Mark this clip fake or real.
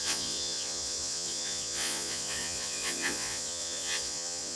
fake